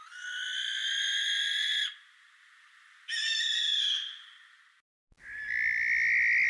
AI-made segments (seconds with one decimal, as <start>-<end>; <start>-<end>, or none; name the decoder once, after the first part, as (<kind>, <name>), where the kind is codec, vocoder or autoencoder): none